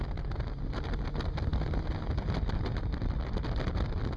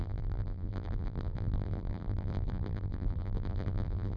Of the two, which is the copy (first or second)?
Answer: second